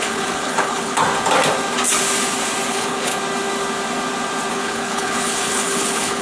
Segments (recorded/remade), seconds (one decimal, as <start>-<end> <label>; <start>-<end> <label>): 0.0-1.0 remade; 1.0-2.7 recorded; 2.7-3.1 remade; 3.1-4.5 recorded; 4.5-6.2 remade